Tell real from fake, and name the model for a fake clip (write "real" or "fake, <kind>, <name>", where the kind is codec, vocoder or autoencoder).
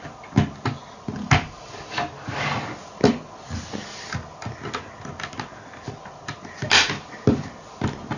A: real